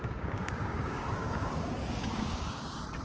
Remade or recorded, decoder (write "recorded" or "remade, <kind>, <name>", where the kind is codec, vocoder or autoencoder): remade, codec, DAC